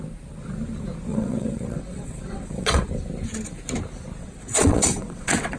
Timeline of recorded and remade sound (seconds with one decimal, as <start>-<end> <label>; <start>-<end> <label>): 0.0-1.1 recorded; 1.1-2.9 remade; 2.9-4.2 recorded; 4.2-5.6 remade